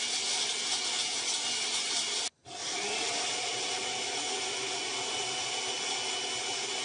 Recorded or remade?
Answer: recorded